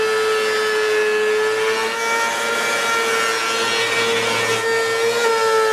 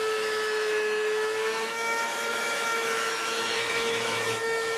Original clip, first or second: first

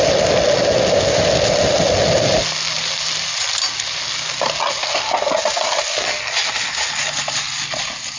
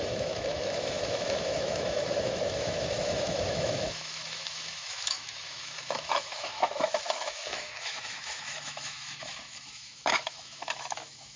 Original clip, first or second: first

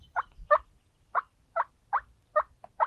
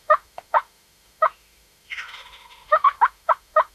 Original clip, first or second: first